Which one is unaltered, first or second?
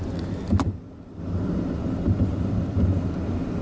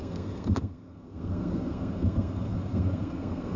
first